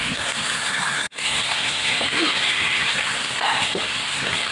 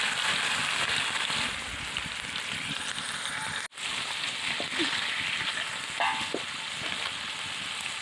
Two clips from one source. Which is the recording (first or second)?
second